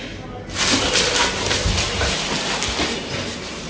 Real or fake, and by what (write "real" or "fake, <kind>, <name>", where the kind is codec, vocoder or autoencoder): real